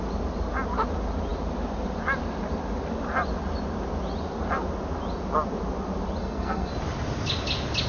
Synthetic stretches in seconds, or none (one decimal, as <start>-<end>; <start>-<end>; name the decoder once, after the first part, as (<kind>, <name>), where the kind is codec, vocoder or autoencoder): 6.2-6.7 (codec, SNAC)